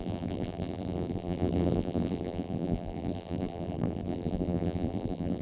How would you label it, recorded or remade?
remade